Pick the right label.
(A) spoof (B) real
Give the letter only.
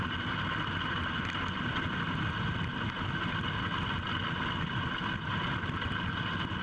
B